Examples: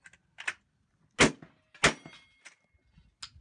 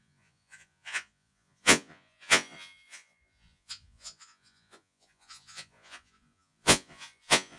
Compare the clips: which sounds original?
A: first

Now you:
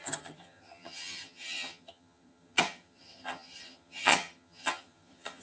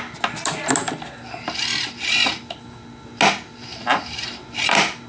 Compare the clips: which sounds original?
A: second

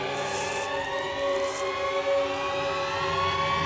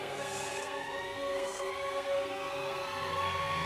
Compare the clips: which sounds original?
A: first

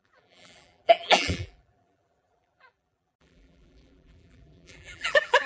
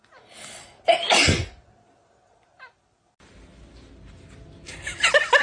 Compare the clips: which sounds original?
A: second